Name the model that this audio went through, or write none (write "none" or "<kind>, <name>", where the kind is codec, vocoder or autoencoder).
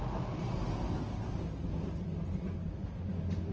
none